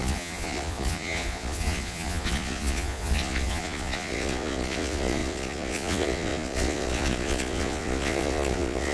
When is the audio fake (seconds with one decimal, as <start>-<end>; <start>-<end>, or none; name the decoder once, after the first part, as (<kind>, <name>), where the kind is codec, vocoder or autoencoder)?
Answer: 0.0-8.9 (vocoder, Vocos)